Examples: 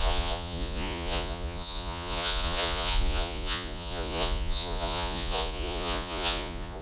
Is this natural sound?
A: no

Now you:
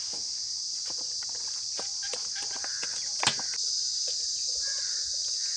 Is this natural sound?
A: yes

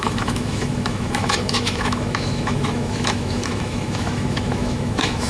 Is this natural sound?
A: no